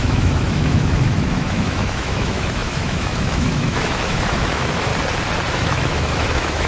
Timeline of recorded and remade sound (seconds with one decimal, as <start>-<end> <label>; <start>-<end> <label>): 0.0-4.9 remade; 4.9-5.5 recorded; 5.5-6.7 remade